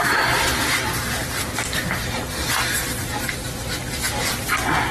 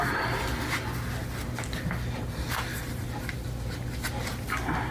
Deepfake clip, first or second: first